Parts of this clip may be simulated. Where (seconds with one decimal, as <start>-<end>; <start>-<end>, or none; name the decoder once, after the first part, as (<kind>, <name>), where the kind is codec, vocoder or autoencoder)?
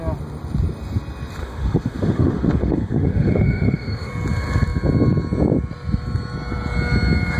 1.4-4.1 (autoencoder, DAC-VAE)